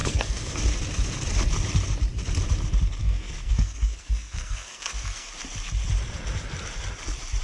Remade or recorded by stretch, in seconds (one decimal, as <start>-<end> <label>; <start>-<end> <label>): 0.0-0.6 remade; 0.6-3.0 recorded; 3.0-5.3 remade; 5.3-7.4 recorded